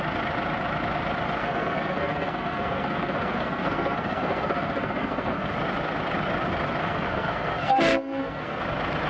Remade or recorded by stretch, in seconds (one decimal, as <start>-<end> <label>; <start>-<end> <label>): 0.0-1.4 recorded; 1.4-5.5 remade; 5.5-6.8 recorded; 6.8-8.6 remade; 8.6-9.1 recorded